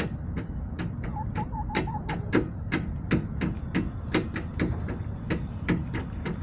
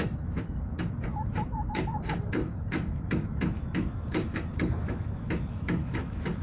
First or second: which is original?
first